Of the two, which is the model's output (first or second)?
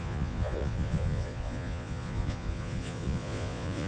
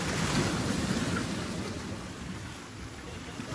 first